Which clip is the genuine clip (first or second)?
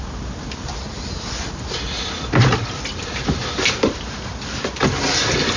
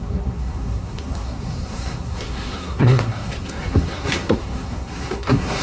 first